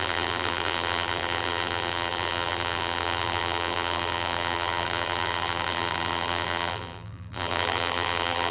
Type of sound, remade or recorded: remade